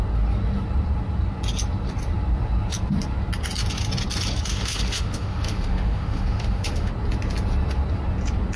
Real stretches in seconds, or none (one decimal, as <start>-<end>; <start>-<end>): 0.0-4.5; 6.9-8.6